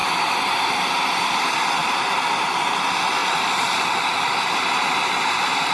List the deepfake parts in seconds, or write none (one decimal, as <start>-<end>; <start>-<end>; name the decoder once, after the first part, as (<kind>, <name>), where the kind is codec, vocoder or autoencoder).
0.0-1.4 (vocoder, BigVGAN v2); 1.8-2.6; 3.2-5.7